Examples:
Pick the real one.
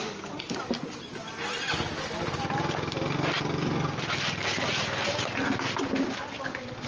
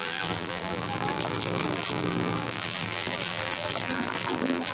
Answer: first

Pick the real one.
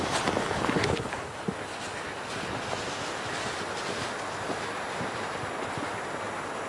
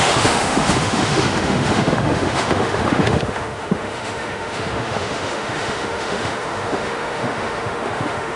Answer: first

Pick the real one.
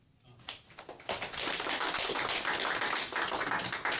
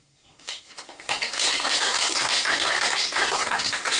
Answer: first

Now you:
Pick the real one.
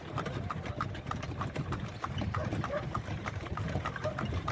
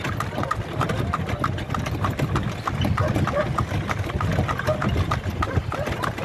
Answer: second